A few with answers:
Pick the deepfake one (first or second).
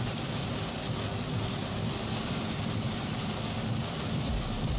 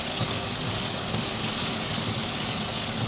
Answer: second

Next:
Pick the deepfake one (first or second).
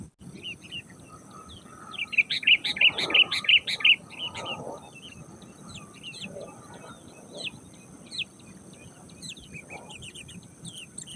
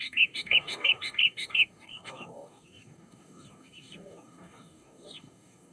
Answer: second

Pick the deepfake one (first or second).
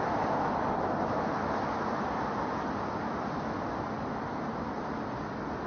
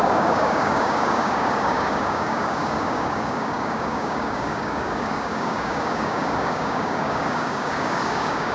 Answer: second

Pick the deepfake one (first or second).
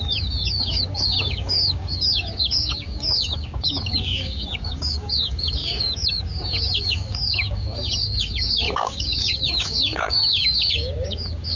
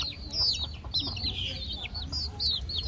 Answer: first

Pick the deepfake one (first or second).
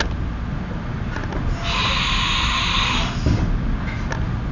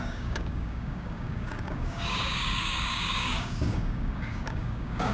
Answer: second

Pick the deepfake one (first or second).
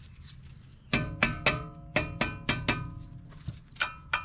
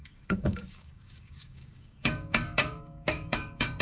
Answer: second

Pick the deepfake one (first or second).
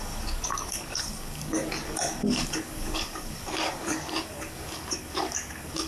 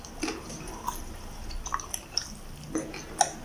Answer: first